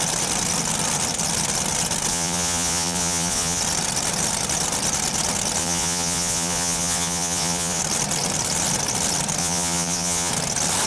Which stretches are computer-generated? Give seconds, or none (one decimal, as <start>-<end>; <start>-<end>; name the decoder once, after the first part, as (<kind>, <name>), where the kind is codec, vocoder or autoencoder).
2.1-3.6 (vocoder, Vocos); 5.6-7.8; 9.4-10.3